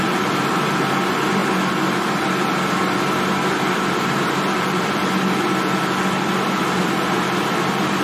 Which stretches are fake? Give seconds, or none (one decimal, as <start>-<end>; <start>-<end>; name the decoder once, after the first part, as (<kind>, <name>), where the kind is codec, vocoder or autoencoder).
0.0-1.4 (vocoder, BigVGAN v2); 4.0-5.0; 6.6-8.0